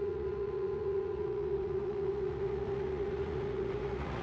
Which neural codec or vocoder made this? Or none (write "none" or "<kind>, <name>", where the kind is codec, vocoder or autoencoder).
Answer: vocoder, Vocos